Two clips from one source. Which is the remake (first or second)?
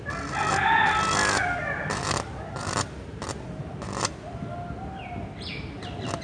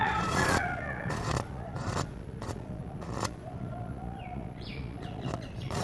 second